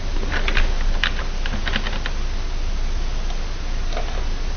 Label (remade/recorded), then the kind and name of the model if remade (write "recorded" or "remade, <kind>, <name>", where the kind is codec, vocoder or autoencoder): recorded